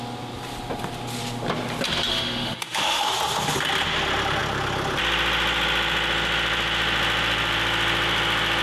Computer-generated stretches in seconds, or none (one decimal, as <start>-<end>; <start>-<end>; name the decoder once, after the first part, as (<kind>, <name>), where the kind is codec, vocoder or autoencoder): 2.1-3.1 (autoencoder, DAC-VAE)